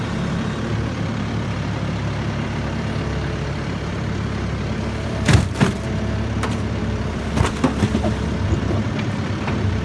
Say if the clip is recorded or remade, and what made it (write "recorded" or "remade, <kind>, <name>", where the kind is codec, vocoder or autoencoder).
remade, vocoder, BigVGAN v2